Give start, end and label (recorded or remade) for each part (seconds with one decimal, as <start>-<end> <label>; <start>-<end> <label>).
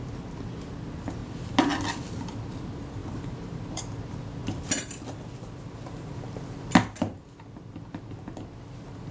0.0-3.0 recorded; 3.0-3.8 remade; 3.8-9.1 recorded